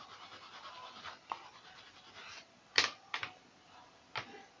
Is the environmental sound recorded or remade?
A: recorded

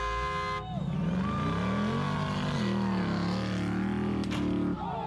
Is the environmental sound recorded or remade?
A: recorded